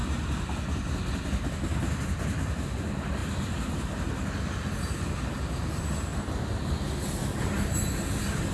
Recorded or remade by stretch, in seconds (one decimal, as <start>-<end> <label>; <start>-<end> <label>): 0.0-8.5 recorded